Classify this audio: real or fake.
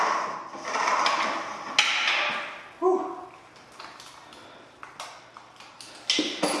real